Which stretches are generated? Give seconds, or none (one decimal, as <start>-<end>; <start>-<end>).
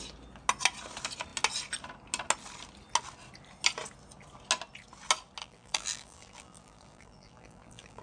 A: 5.4-8.0